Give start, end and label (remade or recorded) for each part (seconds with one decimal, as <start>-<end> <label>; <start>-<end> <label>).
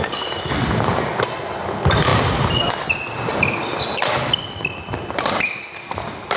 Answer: 0.0-6.4 recorded